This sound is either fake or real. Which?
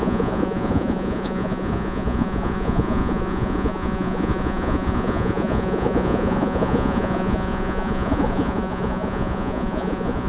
fake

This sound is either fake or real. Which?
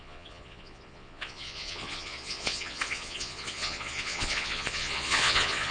fake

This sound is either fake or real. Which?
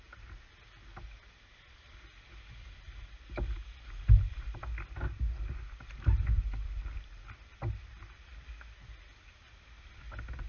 real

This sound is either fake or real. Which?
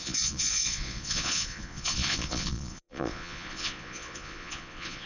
fake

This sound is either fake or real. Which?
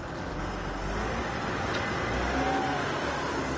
real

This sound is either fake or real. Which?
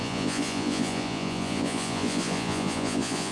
fake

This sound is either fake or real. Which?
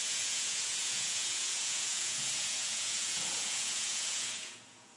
fake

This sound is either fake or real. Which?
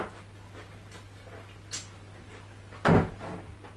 real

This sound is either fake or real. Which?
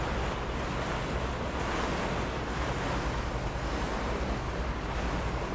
real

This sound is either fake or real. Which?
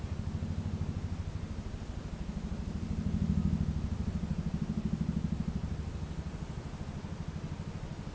real